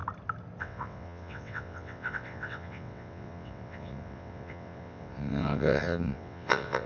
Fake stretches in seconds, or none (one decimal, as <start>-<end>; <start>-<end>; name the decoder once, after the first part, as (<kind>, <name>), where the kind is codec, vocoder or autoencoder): 0.6-6.9 (vocoder, WaveNeXt)